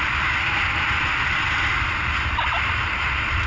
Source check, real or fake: real